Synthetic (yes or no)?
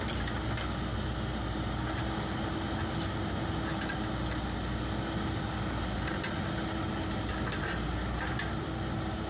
no